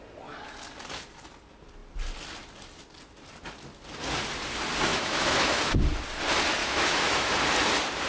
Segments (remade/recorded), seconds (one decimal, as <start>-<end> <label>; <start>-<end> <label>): 0.0-4.9 recorded; 4.9-5.6 remade; 5.6-6.6 recorded; 6.6-7.3 remade; 7.3-8.1 recorded

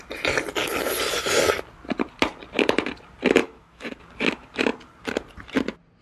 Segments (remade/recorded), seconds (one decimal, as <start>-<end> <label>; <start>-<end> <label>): 0.0-3.4 recorded; 3.4-4.0 remade; 4.0-6.0 recorded

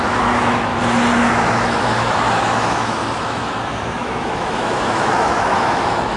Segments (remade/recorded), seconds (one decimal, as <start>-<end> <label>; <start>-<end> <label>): 0.0-0.7 remade; 0.7-1.3 recorded; 1.3-6.2 remade

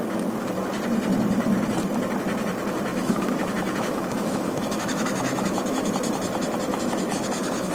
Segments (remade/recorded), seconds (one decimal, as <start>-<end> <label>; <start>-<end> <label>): 0.0-2.9 recorded; 2.9-5.9 remade; 5.9-6.7 recorded; 6.7-7.7 remade

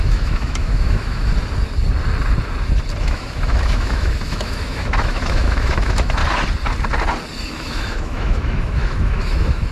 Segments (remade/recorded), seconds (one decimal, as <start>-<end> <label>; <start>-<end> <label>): 0.0-1.3 remade; 1.3-3.0 recorded; 3.0-6.2 remade; 6.2-7.5 recorded; 7.5-9.7 remade

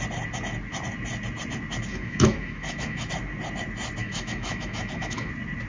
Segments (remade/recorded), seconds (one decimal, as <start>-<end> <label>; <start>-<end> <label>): 0.0-1.9 recorded; 1.9-3.1 remade; 3.1-4.0 recorded; 4.0-5.3 remade; 5.3-5.7 recorded